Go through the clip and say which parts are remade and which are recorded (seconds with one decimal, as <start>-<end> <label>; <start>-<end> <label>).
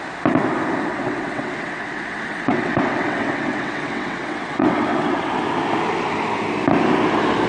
0.0-0.9 recorded; 0.9-5.4 remade; 5.4-7.5 recorded